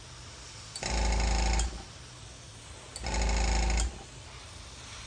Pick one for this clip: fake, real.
real